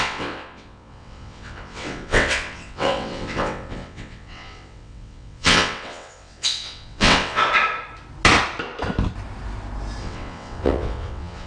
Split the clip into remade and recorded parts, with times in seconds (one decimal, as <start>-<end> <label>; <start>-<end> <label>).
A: 0.0-7.4 remade; 7.4-10.0 recorded; 10.0-11.5 remade